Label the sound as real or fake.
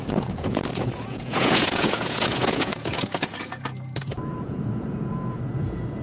fake